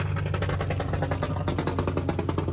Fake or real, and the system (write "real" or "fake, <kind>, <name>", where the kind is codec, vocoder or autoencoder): real